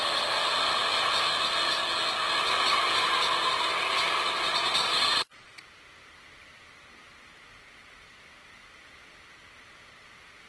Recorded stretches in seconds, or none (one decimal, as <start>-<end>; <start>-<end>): 0.0-4.5; 5.6-10.5